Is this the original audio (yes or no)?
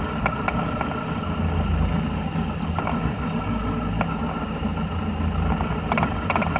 yes